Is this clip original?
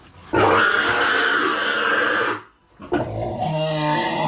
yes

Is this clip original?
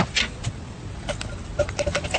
yes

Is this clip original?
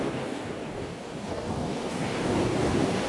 no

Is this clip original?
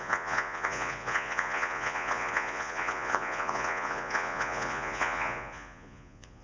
no